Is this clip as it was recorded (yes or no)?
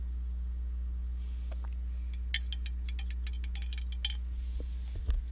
yes